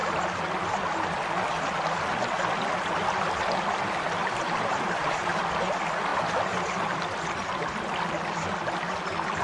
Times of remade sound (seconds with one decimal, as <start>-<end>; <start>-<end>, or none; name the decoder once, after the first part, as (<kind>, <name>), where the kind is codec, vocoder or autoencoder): 4.2-5.4 (vocoder, BigVGAN v2)